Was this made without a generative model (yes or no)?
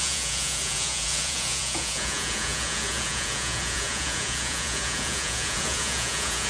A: no